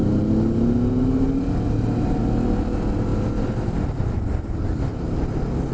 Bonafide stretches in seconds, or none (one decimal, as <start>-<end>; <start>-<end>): 0.0-5.7